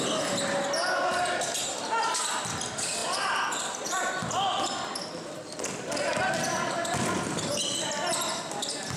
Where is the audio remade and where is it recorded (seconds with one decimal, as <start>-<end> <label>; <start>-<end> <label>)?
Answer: 0.0-3.0 recorded; 3.0-4.1 remade; 4.1-9.0 recorded